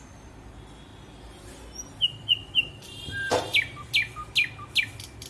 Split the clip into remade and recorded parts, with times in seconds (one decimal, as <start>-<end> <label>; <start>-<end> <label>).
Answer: 0.0-0.9 remade; 0.9-2.0 recorded; 2.0-4.2 remade; 4.2-4.8 recorded; 4.8-5.3 remade